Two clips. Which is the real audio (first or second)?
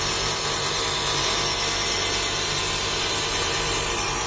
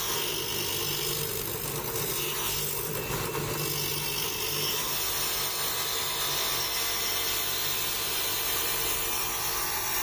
second